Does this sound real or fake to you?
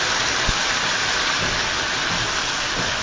real